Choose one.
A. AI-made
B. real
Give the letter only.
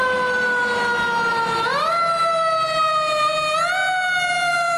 B